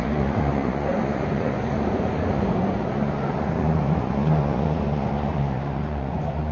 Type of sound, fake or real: fake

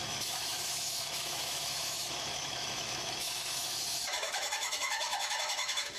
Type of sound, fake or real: fake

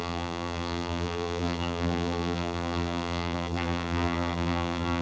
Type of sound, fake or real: fake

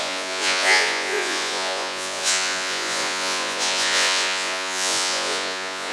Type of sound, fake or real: fake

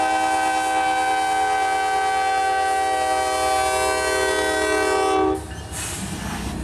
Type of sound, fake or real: real